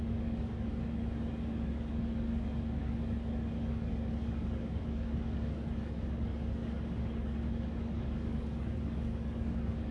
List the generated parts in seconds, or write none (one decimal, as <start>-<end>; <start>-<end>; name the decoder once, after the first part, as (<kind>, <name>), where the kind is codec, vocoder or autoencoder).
0.0-9.9 (codec, DAC)